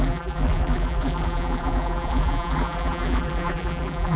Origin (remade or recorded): remade